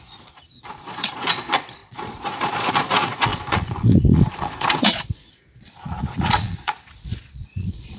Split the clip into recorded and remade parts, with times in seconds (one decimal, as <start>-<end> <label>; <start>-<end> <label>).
0.0-8.0 remade